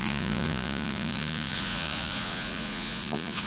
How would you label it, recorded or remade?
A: remade